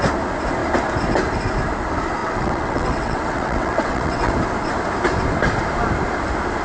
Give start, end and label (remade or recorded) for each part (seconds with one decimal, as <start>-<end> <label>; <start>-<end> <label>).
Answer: 0.0-2.2 recorded; 2.2-4.3 remade; 4.3-6.6 recorded